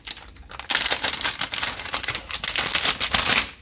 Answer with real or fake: real